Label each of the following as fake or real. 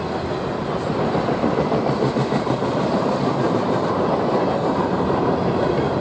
real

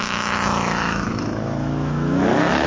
fake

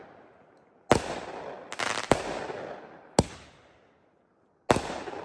real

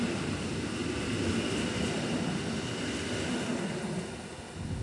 real